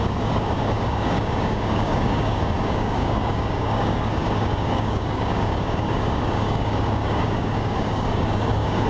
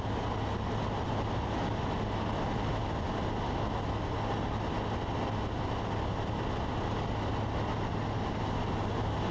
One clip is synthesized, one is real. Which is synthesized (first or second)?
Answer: first